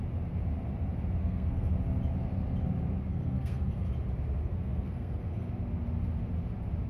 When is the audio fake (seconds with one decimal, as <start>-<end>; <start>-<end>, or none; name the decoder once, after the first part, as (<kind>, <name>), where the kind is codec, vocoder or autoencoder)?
1.2-1.7 (codec, SNAC); 3.1-3.9; 4.4-5.5